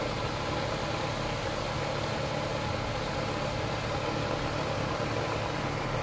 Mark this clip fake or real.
real